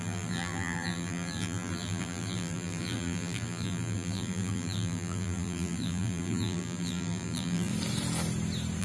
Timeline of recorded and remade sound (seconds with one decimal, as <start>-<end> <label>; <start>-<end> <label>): 0.0-7.7 remade; 7.7-8.8 recorded